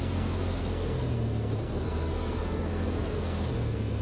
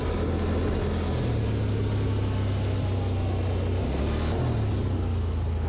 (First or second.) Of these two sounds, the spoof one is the first